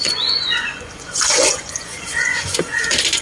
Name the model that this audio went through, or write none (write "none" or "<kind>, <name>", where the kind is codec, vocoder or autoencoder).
vocoder, Vocos